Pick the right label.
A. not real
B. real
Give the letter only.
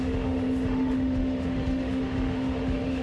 A